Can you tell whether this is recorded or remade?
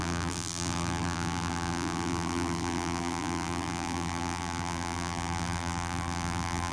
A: remade